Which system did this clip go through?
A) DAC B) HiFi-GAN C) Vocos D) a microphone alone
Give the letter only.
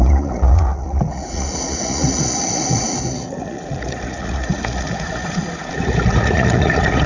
C